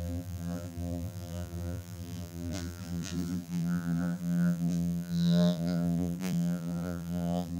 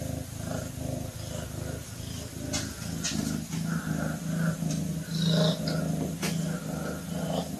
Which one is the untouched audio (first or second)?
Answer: second